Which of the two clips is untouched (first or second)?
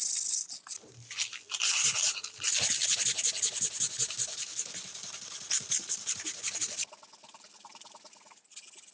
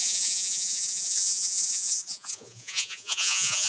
first